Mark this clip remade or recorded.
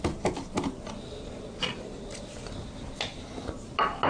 recorded